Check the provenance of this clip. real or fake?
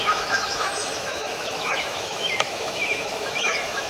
fake